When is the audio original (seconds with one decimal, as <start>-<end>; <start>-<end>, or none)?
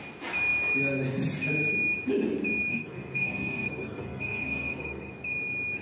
0.0-2.7; 5.1-5.8